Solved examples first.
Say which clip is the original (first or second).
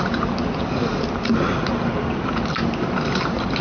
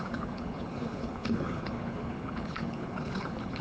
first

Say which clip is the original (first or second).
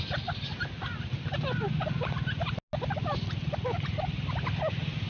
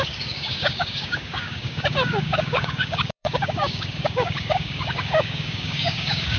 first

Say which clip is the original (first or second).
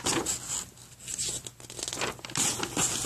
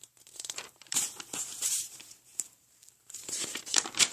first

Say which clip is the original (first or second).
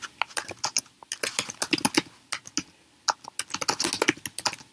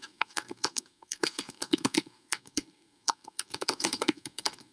first